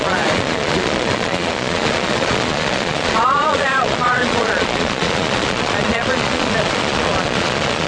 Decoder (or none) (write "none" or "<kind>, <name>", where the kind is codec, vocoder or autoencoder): vocoder, Vocos